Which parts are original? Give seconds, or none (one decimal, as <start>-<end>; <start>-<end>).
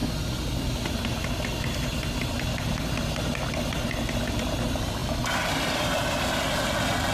0.0-5.0; 6.0-7.1